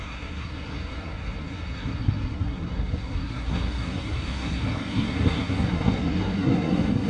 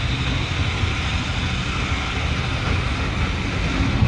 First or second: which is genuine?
second